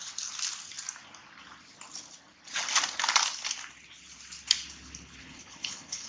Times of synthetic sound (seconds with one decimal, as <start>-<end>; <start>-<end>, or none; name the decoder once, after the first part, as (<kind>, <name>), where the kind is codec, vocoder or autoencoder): 5.2-6.1 (codec, HILCodec)